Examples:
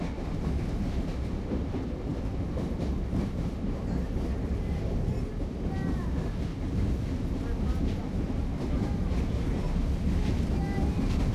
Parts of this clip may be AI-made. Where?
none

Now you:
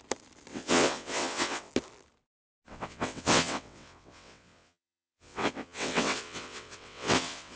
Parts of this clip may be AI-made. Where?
0.5-1.7 (vocoder, WaveNeXt); 2.7-7.6

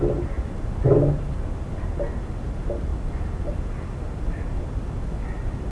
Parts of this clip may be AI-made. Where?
none

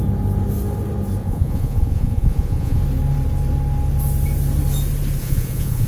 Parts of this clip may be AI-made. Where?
1.2-2.8 (vocoder, Vocos); 5.2-5.9

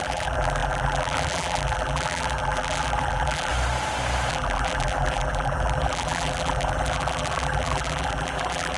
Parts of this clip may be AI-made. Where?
0.0-3.5 (vocoder, BigVGAN v2); 4.3-8.8

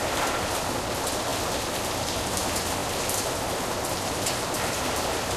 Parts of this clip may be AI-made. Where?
none

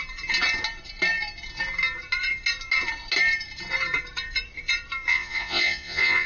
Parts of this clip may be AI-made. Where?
5.1-6.3 (vocoder, Vocos)

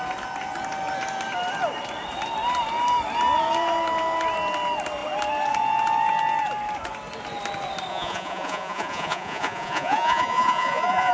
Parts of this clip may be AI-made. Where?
7.9-11.1 (vocoder, Vocos)